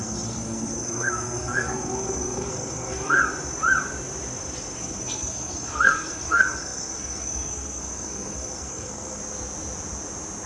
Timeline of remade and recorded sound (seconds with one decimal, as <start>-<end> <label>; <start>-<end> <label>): 0.0-3.2 remade; 3.2-4.8 recorded; 4.8-9.2 remade; 9.2-10.5 recorded